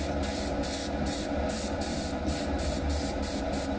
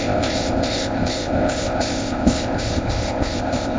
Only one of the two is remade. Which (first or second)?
second